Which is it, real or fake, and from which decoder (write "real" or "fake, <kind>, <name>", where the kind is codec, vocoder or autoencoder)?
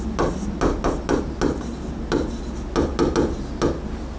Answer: real